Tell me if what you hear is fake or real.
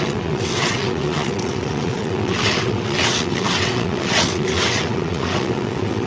fake